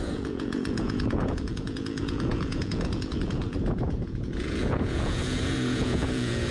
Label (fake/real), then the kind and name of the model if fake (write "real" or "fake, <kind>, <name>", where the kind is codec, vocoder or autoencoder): fake, vocoder, Vocos